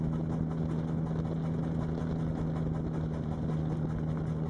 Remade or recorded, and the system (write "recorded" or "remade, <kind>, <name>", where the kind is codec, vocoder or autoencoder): recorded